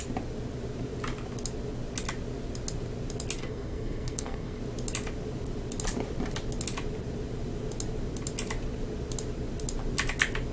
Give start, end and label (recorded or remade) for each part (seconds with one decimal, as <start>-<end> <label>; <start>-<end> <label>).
0.0-3.4 recorded; 3.4-4.6 remade; 4.6-10.5 recorded